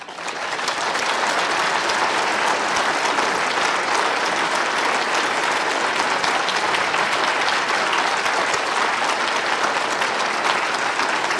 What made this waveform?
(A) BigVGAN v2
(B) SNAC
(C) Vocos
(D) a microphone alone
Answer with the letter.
D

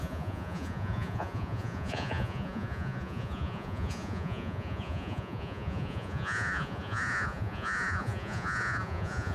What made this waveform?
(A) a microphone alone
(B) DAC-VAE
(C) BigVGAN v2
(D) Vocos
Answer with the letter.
D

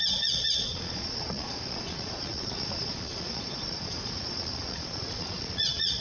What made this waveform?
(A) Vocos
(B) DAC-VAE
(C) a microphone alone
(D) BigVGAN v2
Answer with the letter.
A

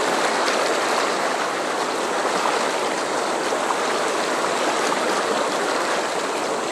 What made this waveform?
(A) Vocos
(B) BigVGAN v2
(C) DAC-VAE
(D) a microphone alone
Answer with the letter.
D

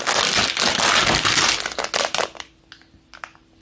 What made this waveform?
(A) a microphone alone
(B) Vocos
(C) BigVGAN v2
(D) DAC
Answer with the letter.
A